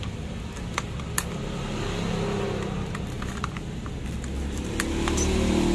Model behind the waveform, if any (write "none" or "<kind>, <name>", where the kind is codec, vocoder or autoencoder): vocoder, BigVGAN v2